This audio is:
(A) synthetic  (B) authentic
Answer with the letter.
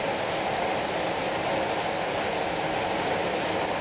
B